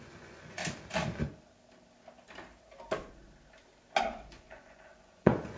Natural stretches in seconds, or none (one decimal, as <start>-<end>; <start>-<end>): 0.6-4.0